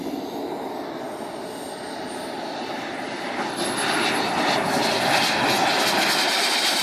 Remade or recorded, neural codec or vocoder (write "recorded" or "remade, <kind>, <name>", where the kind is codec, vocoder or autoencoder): recorded